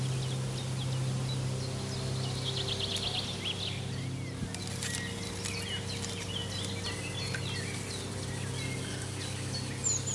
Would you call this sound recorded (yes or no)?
yes